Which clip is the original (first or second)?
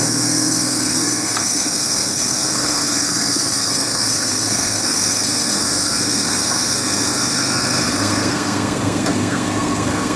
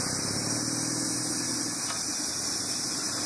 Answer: second